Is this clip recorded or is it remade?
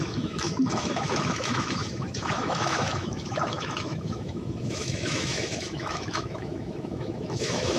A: remade